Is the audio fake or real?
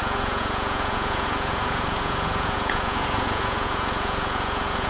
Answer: fake